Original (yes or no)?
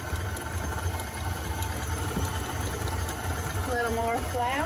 no